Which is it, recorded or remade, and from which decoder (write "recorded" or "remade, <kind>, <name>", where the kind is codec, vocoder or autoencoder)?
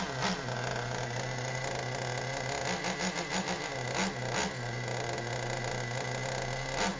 recorded